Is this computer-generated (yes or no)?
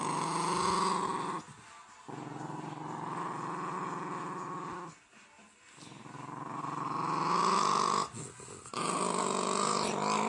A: no